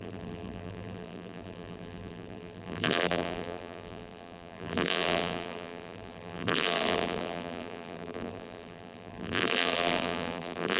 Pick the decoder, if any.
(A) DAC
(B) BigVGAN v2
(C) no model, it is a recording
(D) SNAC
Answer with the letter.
B